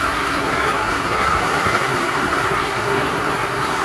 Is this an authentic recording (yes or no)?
no